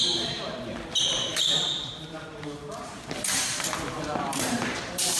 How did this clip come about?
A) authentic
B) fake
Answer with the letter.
B